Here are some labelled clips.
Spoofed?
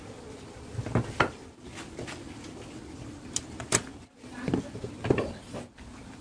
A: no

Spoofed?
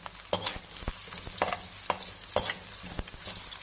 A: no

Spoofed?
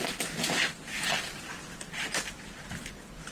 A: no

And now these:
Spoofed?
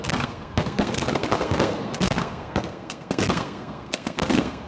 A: yes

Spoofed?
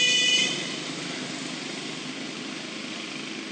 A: no